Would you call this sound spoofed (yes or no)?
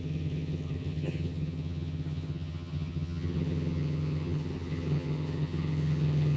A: yes